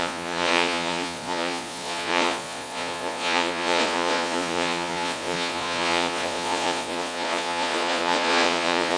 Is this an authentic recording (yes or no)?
no